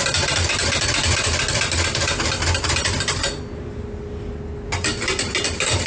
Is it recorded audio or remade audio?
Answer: recorded